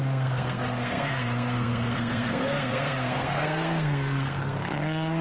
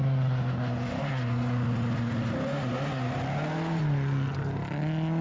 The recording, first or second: second